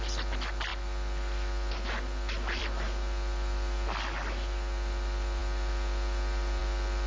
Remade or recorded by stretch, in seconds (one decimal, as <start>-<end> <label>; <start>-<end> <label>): 0.0-7.1 recorded